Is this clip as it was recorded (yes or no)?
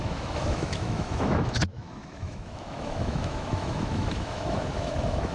no